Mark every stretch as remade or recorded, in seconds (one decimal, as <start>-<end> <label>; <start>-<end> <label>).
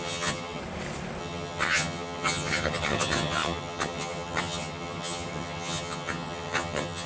0.0-0.6 remade; 0.6-1.2 recorded; 1.2-7.1 remade